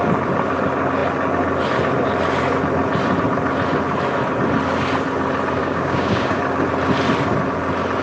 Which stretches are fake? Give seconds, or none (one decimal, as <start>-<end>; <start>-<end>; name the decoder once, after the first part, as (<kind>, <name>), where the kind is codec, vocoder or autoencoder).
5.6-6.4 (codec, DAC)